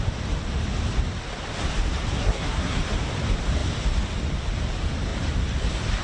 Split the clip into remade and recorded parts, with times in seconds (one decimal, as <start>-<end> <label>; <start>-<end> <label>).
0.0-2.2 recorded; 2.2-2.8 remade; 2.8-6.0 recorded